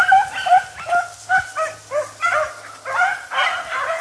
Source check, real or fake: real